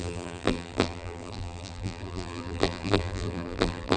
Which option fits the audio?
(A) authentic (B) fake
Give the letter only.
B